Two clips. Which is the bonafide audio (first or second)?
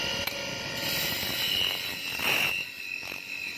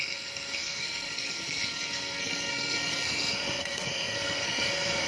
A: first